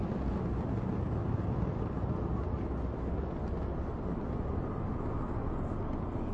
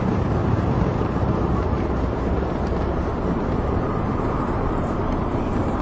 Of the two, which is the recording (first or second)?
first